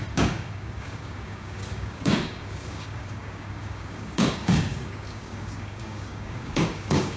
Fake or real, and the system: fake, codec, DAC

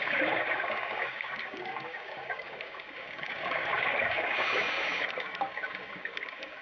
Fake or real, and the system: fake, codec, DAC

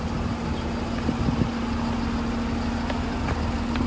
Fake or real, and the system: real